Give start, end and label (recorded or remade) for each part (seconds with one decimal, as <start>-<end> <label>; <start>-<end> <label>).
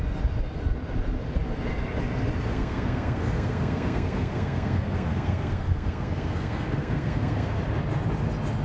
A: 0.0-2.5 recorded; 2.5-7.6 remade; 7.6-8.6 recorded